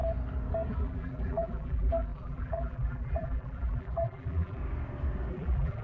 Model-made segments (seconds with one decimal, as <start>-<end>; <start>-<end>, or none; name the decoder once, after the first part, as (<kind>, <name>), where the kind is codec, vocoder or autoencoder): 0.7-4.6 (vocoder, BigVGAN v2); 5.3-5.8